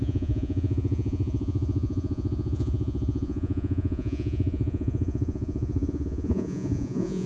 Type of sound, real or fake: fake